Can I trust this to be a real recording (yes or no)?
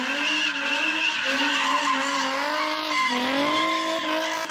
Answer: yes